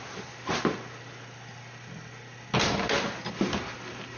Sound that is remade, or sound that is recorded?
recorded